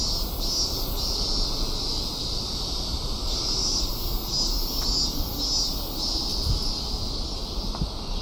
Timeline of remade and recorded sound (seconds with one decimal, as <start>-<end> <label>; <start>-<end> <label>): 0.0-2.2 recorded; 2.2-3.9 remade; 3.9-8.2 recorded